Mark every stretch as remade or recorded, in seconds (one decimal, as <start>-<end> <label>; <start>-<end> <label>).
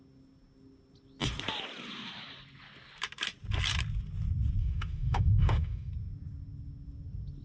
0.0-4.6 recorded; 4.6-5.9 remade; 5.9-7.4 recorded